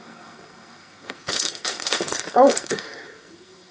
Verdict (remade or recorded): remade